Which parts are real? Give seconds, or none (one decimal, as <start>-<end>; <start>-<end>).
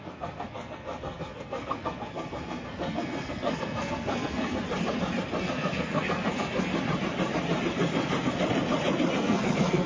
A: 4.6-5.4; 6.7-9.1